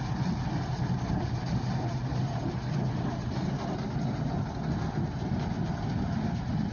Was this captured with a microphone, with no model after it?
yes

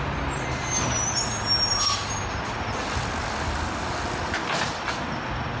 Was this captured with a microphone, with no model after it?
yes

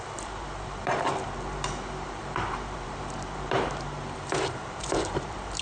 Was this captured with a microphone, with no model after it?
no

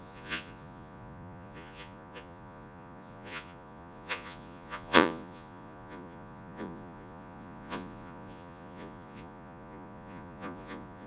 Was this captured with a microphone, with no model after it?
no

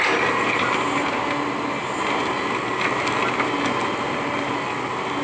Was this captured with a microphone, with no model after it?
yes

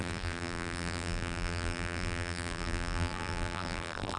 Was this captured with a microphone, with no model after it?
no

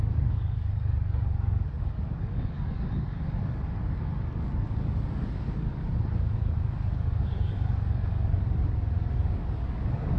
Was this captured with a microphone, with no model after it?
no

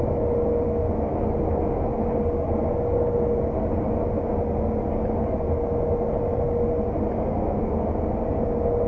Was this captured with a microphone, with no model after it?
yes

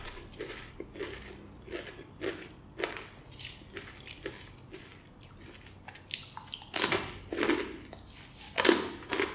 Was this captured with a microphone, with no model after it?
yes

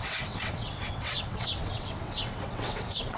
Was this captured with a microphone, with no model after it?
no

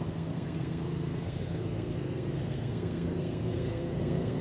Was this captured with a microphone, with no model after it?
no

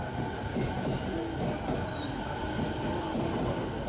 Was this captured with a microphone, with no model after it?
yes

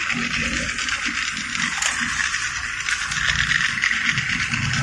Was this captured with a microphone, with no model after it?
no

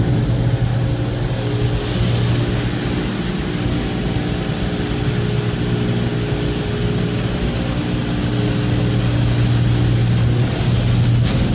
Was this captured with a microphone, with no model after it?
yes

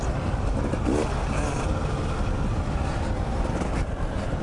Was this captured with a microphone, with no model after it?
yes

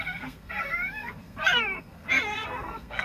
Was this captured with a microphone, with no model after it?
no